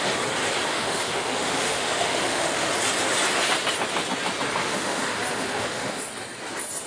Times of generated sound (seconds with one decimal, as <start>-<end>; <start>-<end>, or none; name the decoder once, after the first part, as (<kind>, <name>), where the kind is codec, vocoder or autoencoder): 0.7-2.7 (autoencoder, DAC-VAE); 4.6-6.1